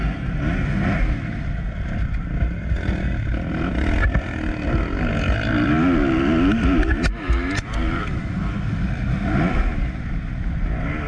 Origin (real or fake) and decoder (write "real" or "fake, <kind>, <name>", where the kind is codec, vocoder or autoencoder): real